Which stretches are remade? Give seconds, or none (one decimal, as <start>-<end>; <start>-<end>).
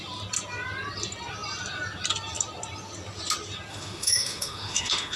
3.7-5.2